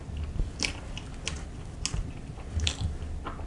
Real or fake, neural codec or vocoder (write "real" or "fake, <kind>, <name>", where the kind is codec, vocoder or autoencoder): real